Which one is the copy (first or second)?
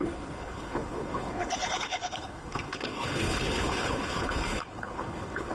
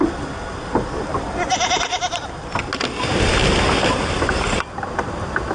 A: first